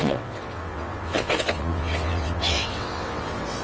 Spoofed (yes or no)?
yes